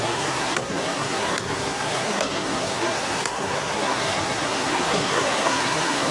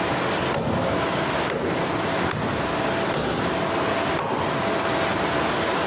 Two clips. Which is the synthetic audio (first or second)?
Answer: first